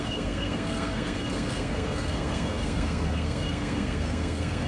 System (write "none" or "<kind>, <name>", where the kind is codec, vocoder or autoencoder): codec, SNAC